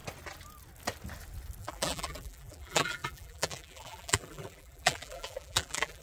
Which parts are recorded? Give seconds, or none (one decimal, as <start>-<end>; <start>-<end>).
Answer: 0.0-1.6